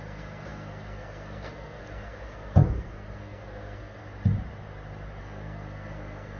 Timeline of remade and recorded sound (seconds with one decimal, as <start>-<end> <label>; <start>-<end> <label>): 0.0-4.0 remade; 4.0-5.2 recorded; 5.2-6.4 remade